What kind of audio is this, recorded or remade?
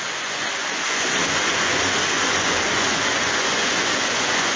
remade